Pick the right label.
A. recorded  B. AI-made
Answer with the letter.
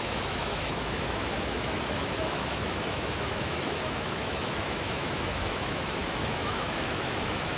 B